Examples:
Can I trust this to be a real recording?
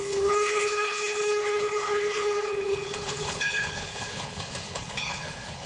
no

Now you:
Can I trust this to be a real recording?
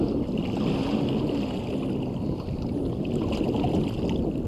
yes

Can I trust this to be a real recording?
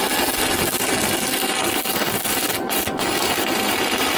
yes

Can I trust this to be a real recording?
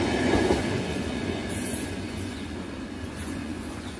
no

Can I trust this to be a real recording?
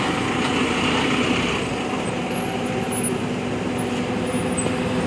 yes